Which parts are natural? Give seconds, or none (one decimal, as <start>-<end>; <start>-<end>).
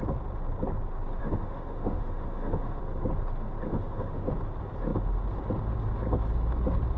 0.0-1.2; 2.8-3.7; 4.3-7.0